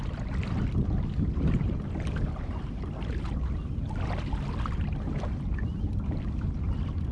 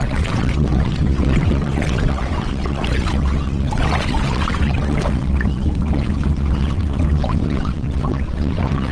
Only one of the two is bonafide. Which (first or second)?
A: first